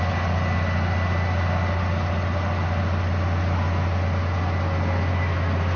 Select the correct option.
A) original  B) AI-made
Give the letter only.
A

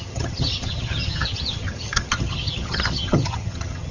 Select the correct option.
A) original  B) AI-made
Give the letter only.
B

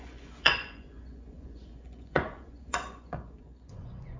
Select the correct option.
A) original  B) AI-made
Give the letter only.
B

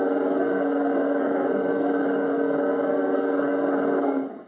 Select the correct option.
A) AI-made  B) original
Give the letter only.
A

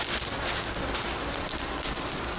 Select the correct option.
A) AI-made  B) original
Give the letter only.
B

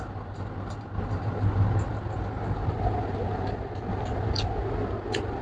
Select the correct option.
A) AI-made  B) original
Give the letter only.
B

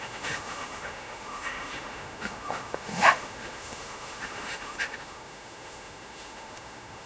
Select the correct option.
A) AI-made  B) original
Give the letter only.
A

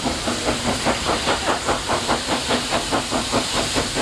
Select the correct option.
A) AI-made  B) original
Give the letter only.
A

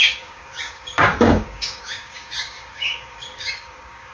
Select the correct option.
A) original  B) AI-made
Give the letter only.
B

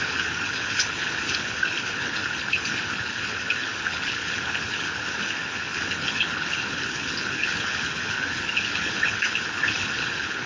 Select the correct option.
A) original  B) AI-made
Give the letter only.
B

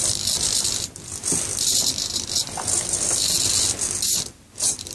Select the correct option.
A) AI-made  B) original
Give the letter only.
B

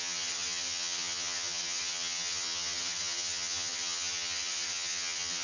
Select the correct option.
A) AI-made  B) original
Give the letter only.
A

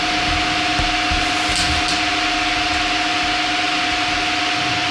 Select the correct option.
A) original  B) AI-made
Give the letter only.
A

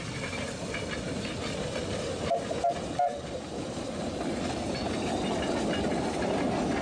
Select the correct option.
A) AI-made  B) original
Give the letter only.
B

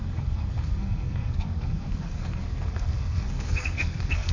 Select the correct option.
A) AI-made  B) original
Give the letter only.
A